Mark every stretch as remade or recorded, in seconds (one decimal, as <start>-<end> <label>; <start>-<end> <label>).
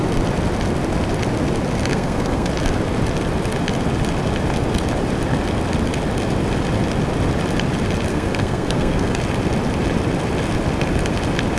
0.0-1.9 recorded; 1.9-2.5 remade; 2.5-8.1 recorded; 8.1-9.2 remade; 9.2-11.6 recorded